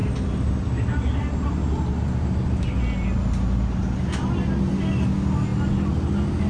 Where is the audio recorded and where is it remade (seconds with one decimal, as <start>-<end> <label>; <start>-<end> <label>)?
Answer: 0.0-6.5 recorded